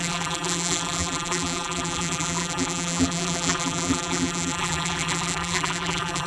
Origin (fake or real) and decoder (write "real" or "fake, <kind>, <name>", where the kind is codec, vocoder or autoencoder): fake, vocoder, BigVGAN v2